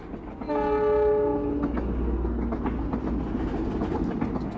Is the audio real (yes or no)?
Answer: yes